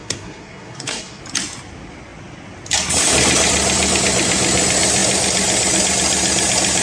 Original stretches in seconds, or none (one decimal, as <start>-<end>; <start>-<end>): 1.2-6.8